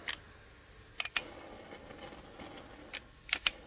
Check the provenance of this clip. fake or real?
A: real